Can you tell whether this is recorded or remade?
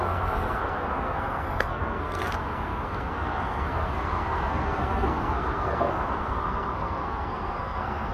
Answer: remade